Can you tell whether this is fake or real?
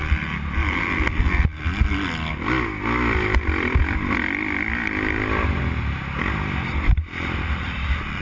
real